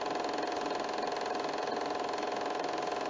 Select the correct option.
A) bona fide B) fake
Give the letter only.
A